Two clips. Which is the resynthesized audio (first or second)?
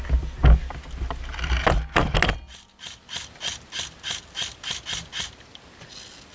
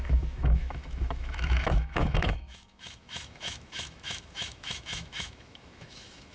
second